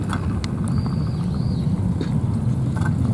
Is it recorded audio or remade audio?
recorded